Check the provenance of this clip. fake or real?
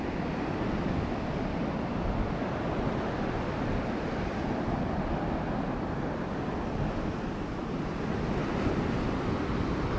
real